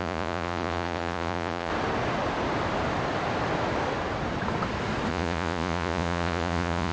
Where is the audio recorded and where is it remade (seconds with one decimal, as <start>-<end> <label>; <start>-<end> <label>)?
0.0-1.7 remade; 1.7-5.1 recorded; 5.1-6.9 remade